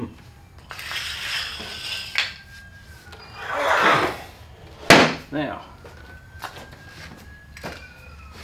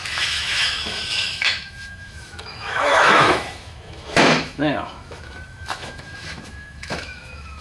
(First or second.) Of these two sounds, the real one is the first